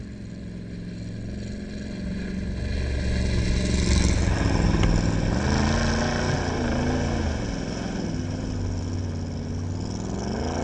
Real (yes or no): yes